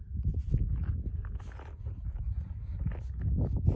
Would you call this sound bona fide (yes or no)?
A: yes